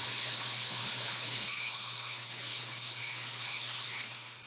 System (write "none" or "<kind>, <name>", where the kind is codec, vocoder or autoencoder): codec, HILCodec